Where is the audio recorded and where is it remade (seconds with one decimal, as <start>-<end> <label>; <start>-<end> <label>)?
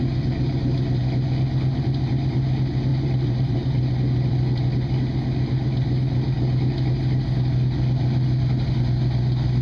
0.0-2.9 recorded; 2.9-4.3 remade; 4.3-9.6 recorded